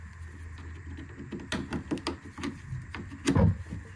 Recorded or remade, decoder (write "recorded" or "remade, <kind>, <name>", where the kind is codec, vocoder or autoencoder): recorded